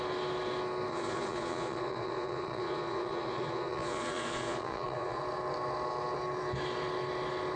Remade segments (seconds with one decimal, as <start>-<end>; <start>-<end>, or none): 0.9-5.2